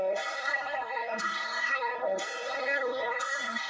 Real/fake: fake